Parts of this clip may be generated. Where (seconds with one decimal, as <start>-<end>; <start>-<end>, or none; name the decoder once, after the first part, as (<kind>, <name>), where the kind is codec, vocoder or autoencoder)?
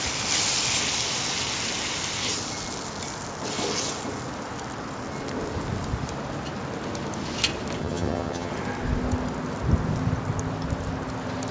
7.8-8.5 (vocoder, HiFi-GAN)